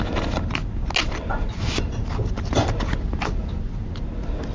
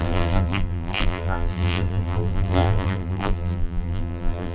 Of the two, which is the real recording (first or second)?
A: first